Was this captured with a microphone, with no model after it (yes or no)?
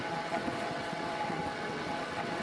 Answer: no